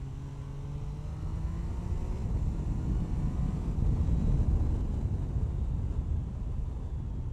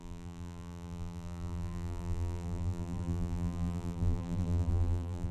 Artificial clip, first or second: second